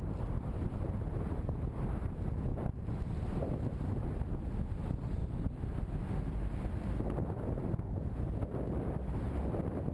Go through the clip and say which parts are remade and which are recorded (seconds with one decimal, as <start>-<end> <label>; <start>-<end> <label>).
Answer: 0.0-9.9 recorded